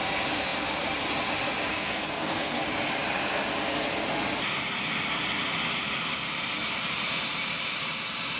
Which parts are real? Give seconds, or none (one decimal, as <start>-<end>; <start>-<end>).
0.0-1.7; 2.6-8.4